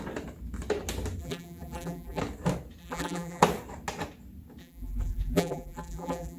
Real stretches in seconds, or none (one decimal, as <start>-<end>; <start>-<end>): 0.0-1.2; 2.2-2.8; 3.4-4.6